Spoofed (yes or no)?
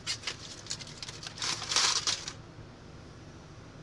no